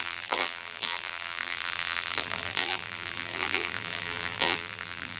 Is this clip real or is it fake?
fake